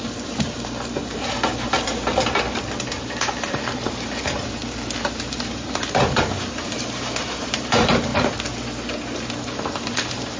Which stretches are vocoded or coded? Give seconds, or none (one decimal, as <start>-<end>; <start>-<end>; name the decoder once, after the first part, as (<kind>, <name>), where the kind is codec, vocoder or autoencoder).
0.0-2.0 (vocoder, BigVGAN v2); 2.9-4.6; 5.3-8.1; 9.4-10.4